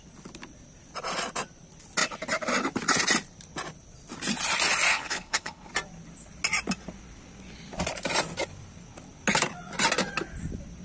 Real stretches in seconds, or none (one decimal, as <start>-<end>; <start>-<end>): 0.0-4.9; 5.7-10.8